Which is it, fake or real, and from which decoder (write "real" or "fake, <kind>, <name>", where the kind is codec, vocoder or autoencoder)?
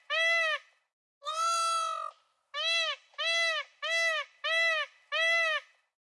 real